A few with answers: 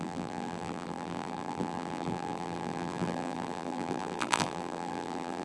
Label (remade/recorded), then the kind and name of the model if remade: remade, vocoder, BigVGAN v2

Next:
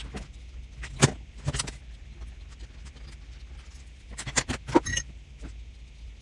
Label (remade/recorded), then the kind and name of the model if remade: recorded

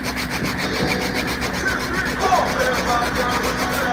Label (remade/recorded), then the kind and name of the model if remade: recorded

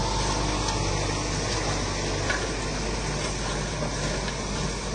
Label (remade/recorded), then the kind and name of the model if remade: recorded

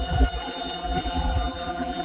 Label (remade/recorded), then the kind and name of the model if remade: remade, vocoder, BigVGAN v2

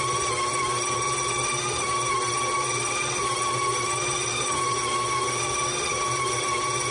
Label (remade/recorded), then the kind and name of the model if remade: recorded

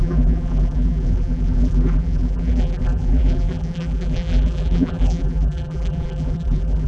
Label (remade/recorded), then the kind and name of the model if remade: remade, vocoder, BigVGAN v2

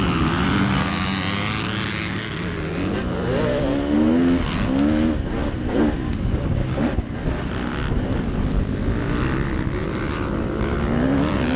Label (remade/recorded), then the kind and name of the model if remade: recorded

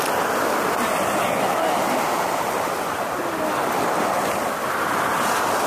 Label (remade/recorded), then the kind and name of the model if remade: recorded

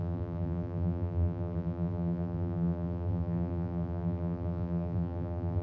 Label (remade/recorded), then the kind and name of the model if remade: remade, vocoder, BigVGAN v2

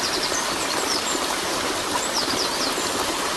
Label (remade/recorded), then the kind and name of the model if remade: remade, vocoder, BigVGAN v2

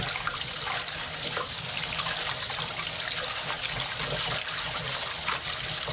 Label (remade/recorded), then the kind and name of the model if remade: recorded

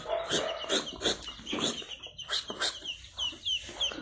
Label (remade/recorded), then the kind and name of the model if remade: recorded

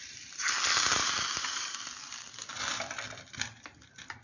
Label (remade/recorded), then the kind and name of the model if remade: remade, vocoder, BigVGAN v2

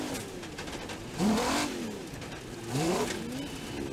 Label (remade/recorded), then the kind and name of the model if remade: recorded